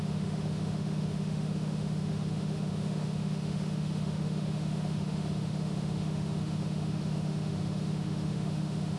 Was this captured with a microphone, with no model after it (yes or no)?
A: no